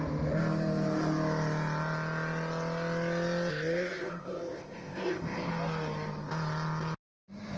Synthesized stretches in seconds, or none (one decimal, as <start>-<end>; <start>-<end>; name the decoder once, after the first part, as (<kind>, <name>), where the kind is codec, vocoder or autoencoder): 3.5-5.5 (codec, ZipCodec)